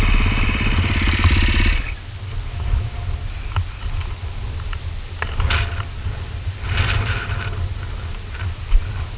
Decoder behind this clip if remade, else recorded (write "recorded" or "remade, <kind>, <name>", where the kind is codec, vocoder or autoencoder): recorded